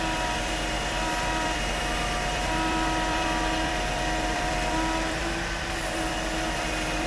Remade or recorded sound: remade